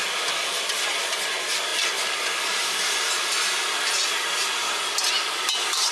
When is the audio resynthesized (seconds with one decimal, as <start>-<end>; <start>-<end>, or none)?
1.7-3.5